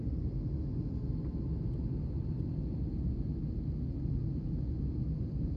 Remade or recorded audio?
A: recorded